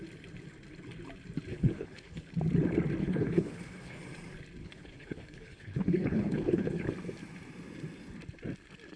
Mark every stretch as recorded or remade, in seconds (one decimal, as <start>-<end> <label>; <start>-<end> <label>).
0.0-1.5 recorded; 1.5-2.3 remade; 2.3-3.0 recorded; 3.0-4.0 remade; 4.0-4.6 recorded; 4.6-6.9 remade; 6.9-9.0 recorded